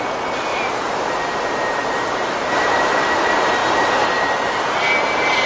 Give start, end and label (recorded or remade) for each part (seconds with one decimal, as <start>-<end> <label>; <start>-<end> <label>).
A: 0.0-0.5 recorded; 0.5-1.1 remade; 1.1-1.8 recorded; 1.8-3.2 remade; 3.2-3.6 recorded; 3.6-5.5 remade